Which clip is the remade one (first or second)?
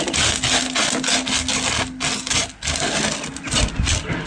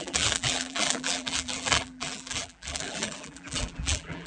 second